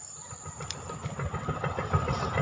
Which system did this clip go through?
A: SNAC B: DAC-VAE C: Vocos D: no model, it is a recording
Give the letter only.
D